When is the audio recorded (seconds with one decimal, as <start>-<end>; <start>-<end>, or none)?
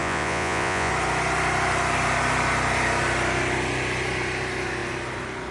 0.9-5.5